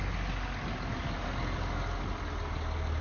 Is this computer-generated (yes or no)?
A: no